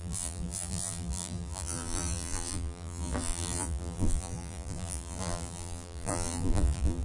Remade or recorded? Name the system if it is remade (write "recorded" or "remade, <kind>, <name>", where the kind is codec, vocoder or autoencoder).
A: remade, vocoder, BigVGAN v2